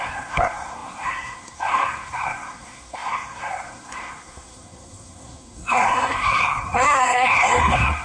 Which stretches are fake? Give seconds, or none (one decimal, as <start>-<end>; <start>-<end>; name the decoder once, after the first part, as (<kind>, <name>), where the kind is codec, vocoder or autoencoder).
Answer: 0.0-8.0 (codec, SNAC)